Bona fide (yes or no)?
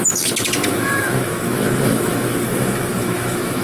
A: no